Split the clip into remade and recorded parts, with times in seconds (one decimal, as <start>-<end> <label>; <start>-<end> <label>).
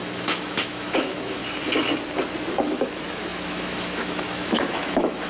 0.0-1.4 remade; 1.4-2.6 recorded; 2.6-5.3 remade